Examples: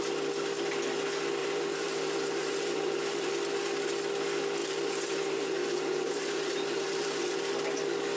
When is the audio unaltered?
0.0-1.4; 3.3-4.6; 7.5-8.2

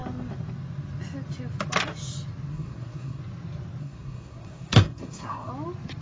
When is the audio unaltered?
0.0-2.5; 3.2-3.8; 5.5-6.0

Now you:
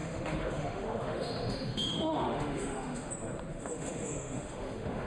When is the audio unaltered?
3.1-3.5

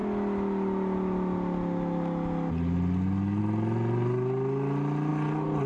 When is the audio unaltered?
0.0-5.7

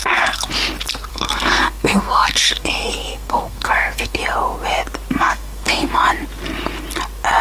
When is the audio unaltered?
0.5-1.1; 4.2-5.1; 6.0-7.4

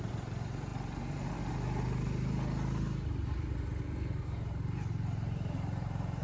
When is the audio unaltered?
0.7-4.1

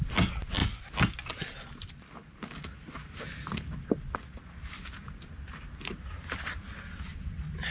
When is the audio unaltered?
0.0-7.7